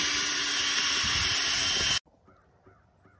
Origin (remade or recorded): recorded